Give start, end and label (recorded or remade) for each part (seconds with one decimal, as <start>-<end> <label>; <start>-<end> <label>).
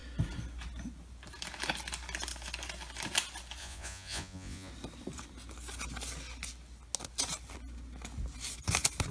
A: 0.0-3.6 recorded; 3.6-4.7 remade; 4.7-9.1 recorded